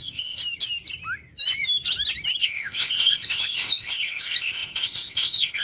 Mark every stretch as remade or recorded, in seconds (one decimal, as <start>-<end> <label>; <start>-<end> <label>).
0.0-0.4 remade; 0.4-2.4 recorded; 2.4-5.6 remade